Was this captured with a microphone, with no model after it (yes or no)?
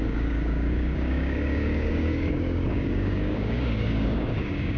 no